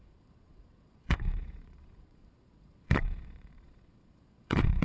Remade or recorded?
remade